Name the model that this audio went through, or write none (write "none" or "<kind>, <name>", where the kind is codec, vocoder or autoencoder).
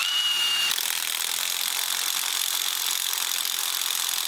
none